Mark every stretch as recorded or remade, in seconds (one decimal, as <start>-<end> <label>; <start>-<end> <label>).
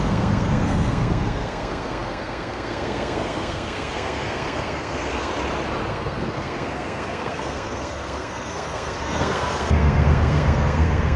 0.0-5.3 remade; 5.3-5.9 recorded; 5.9-11.2 remade